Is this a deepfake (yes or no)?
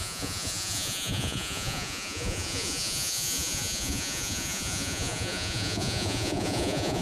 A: yes